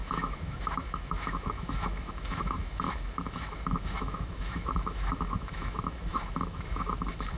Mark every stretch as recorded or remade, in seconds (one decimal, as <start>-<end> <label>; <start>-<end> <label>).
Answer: 0.0-7.4 remade